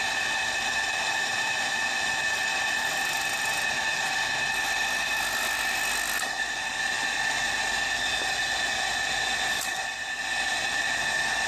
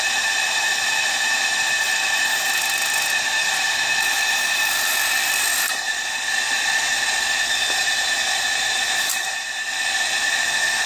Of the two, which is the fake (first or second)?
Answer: second